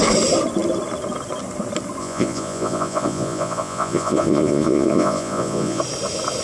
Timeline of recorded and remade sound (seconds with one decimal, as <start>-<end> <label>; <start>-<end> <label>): 0.0-2.0 recorded; 2.0-5.8 remade; 5.8-6.4 recorded